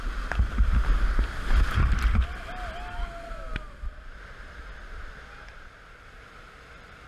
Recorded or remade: recorded